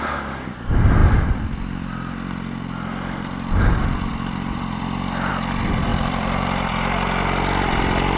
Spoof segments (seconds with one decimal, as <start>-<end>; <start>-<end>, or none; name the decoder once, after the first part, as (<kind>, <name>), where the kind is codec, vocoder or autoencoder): 1.0-3.6 (vocoder, BigVGAN v2); 4.1-5.3; 5.9-6.7